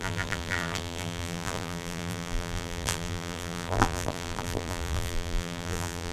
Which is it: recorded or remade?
remade